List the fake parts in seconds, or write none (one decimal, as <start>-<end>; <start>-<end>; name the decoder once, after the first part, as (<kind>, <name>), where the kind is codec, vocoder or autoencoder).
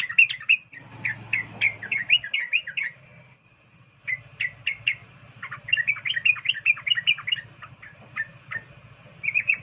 none